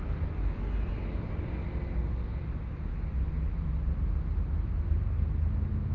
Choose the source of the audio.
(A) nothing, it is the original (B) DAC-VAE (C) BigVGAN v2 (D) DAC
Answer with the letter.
A